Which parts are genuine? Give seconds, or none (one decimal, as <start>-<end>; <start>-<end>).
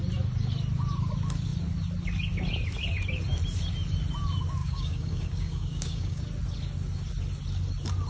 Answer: 0.0-4.6; 6.2-8.1